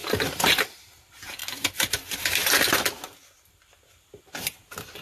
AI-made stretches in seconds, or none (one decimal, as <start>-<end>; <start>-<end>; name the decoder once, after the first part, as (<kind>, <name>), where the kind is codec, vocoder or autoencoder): 0.0-0.9 (vocoder, BigVGAN v2)